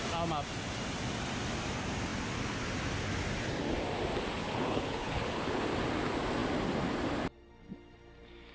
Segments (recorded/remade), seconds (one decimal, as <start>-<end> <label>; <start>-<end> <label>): 0.0-4.4 recorded; 4.4-5.6 remade; 5.6-8.5 recorded